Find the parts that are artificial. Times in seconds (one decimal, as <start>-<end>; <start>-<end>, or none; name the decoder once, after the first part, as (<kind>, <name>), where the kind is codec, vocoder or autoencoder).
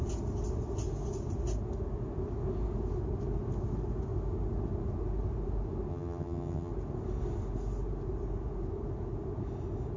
5.9-6.7 (vocoder, HiFi-GAN)